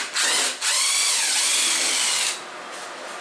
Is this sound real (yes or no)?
yes